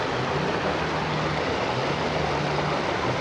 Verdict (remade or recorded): recorded